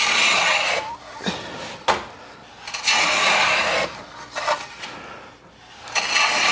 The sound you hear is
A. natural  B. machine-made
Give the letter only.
A